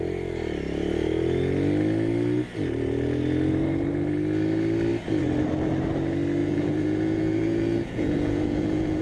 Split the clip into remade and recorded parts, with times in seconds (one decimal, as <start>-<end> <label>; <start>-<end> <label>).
0.0-6.4 recorded; 6.4-9.0 remade